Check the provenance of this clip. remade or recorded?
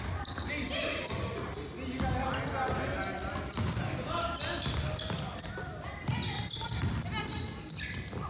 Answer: recorded